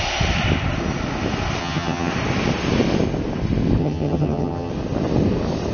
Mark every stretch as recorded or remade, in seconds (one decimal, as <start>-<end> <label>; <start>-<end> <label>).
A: 0.0-1.6 recorded; 1.6-2.1 remade; 2.1-3.8 recorded; 3.8-4.7 remade; 4.7-5.7 recorded